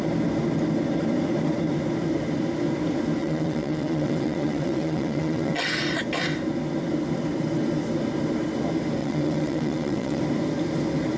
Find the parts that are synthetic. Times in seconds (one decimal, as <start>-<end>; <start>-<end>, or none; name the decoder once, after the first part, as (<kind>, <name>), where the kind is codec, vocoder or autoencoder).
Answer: 3.2-5.7 (vocoder, WaveNeXt); 9.0-10.2